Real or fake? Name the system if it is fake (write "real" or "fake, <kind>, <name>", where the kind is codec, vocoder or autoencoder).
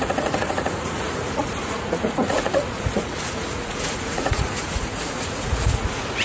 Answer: fake, vocoder, Vocos